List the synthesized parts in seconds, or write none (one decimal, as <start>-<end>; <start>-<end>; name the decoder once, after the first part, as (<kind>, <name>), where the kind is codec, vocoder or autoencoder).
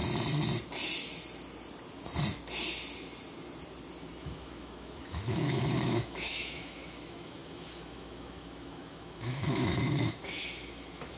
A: 4.2-11.2 (autoencoder, DAC-VAE)